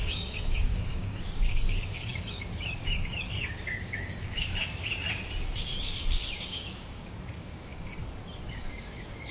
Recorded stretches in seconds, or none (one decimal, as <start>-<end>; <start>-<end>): 4.9-5.8; 7.9-8.5